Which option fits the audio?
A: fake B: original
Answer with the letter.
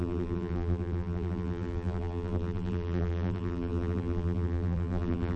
A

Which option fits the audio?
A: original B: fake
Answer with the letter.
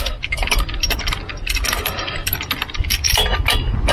A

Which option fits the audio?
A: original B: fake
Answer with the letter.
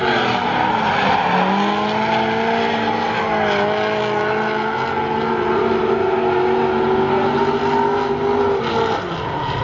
A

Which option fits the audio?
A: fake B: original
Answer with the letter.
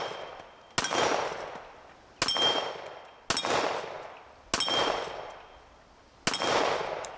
B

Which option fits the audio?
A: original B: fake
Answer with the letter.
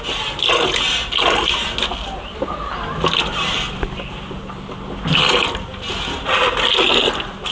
A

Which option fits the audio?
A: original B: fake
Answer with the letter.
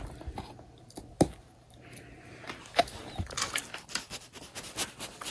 A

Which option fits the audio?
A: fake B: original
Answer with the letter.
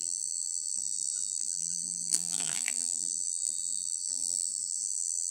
A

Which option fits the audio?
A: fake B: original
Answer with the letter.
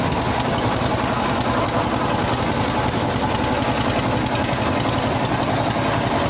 B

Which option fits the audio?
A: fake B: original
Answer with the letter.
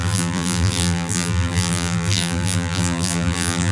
A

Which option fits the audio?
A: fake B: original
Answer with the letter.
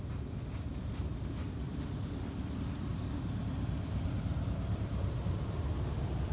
A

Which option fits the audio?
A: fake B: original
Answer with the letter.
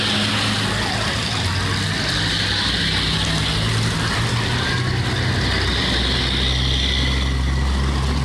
B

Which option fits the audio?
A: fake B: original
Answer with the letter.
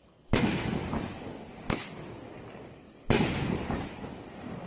B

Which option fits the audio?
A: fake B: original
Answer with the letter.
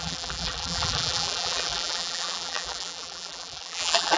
A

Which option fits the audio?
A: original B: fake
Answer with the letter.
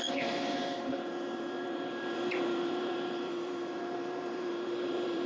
B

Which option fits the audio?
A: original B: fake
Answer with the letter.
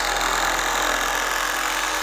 A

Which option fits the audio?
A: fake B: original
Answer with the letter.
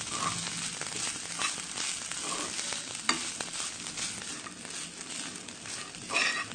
B